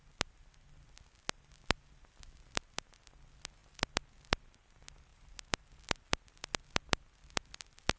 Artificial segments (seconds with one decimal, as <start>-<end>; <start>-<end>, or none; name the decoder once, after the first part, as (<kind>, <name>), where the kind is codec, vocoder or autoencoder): 5.1-5.6 (vocoder, BigVGAN v2)